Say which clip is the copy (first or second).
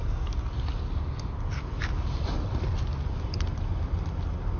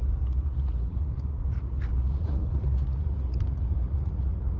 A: second